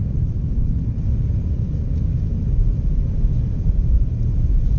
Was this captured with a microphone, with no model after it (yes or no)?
yes